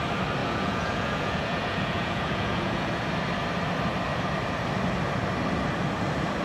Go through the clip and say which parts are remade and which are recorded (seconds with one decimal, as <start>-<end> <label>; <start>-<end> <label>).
0.0-0.4 recorded; 0.4-3.0 remade; 3.0-6.4 recorded